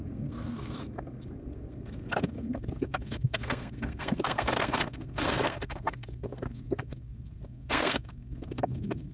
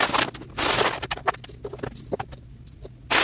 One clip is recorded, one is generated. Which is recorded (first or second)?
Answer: second